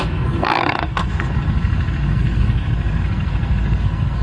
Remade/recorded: remade